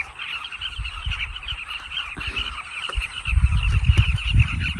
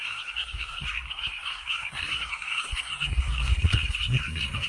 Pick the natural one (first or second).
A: first